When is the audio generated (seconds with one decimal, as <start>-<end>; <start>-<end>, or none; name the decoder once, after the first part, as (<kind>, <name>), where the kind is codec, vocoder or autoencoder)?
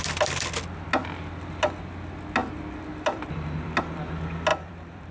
2.4-3.8 (vocoder, BigVGAN v2); 4.5-5.1